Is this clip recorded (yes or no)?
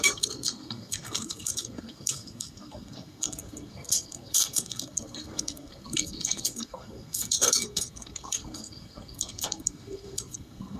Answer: no